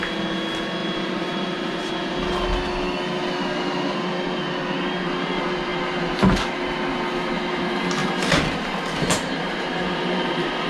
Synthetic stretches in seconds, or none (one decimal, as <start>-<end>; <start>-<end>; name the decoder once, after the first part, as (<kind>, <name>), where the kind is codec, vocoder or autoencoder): 0.8-1.9 (vocoder, BigVGAN v2); 8.0-10.7